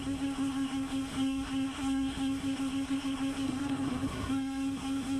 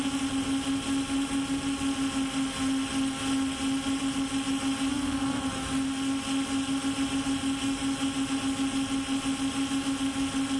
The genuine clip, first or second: second